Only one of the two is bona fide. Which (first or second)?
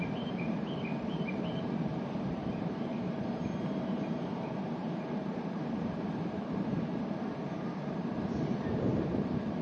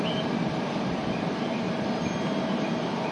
second